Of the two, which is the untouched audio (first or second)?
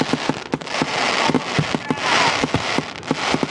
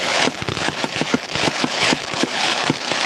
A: first